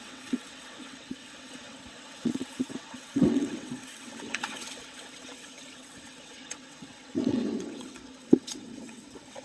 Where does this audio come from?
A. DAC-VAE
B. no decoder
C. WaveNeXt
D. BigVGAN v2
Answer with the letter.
C